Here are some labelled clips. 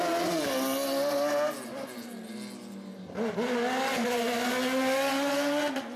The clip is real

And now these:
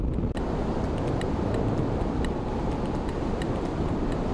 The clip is real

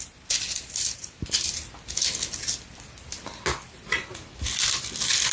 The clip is real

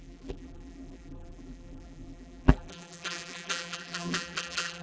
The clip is fake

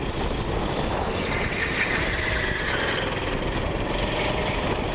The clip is real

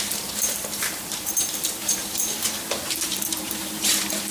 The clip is fake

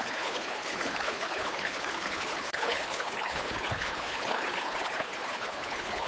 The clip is fake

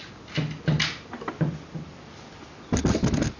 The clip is real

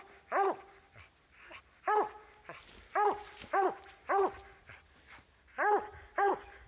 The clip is real